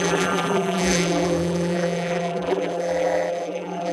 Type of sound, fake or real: fake